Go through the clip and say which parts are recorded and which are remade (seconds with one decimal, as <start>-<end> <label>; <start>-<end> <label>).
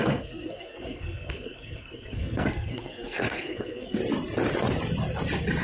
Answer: 0.0-4.0 remade; 4.0-5.6 recorded